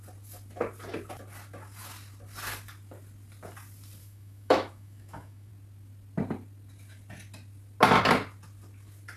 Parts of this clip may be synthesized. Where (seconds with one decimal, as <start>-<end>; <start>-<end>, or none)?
4.0-5.5